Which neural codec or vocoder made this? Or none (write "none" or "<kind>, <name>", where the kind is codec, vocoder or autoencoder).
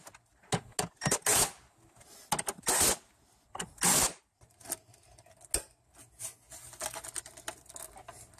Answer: none